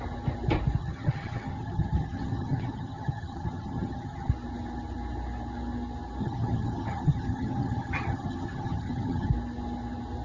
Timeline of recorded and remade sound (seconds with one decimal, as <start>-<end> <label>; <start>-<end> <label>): 0.0-0.8 recorded; 0.8-4.3 remade; 4.3-6.2 recorded; 6.2-9.3 remade; 9.3-10.2 recorded

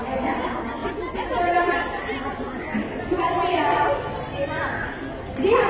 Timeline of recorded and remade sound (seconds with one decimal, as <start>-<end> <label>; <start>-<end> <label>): 0.0-5.7 recorded